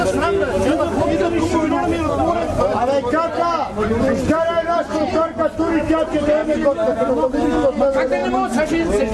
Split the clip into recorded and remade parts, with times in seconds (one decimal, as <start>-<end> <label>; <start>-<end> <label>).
0.0-6.4 recorded; 6.4-7.1 remade; 7.1-9.1 recorded